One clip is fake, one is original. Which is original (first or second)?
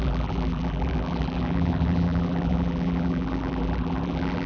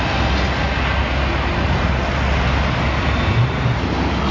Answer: second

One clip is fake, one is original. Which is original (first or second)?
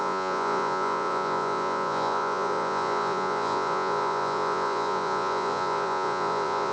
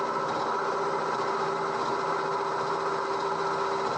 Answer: second